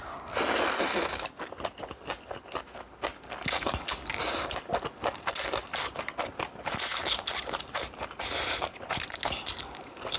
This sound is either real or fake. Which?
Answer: real